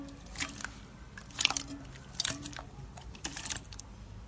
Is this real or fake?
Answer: real